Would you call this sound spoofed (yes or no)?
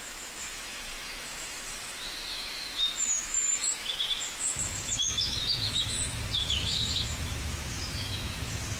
yes